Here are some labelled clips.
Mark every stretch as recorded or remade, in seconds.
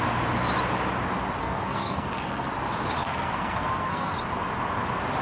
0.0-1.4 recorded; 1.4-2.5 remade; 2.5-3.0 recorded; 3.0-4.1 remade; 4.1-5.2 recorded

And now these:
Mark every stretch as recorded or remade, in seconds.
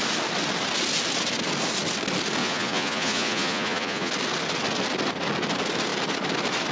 0.0-2.4 recorded; 2.4-4.1 remade; 4.1-6.7 recorded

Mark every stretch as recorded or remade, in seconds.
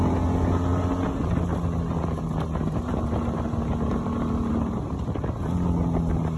0.0-6.4 recorded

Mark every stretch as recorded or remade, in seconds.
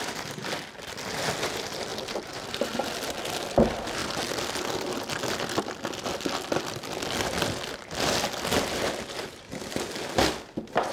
0.0-10.9 recorded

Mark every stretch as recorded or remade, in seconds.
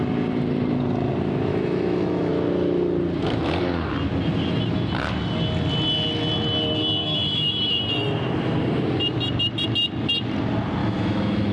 0.0-1.5 recorded; 1.5-2.3 remade; 2.3-7.0 recorded; 7.0-7.8 remade; 7.8-10.8 recorded; 10.8-11.5 remade